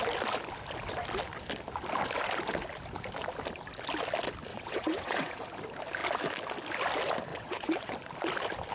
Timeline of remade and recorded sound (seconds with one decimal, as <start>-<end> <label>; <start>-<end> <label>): 0.0-4.5 recorded; 4.5-5.3 remade; 5.3-7.3 recorded; 7.3-7.9 remade; 7.9-8.7 recorded